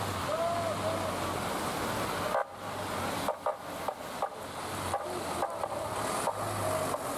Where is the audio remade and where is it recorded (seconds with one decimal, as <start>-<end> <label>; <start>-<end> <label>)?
0.0-7.2 recorded